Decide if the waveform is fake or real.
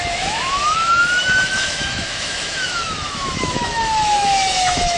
fake